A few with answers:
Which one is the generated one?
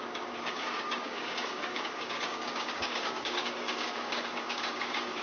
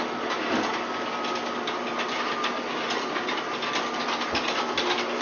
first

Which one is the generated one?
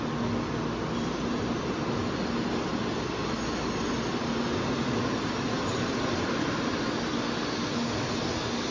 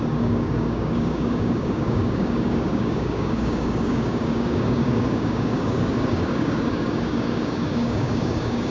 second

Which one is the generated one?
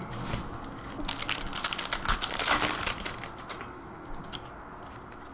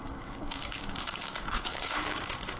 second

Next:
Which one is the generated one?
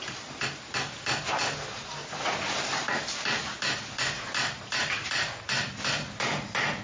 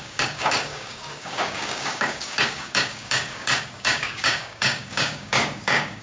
second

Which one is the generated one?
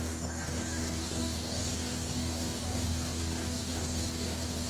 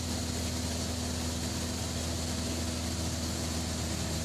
first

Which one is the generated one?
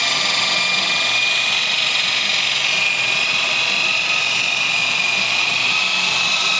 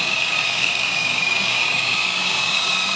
second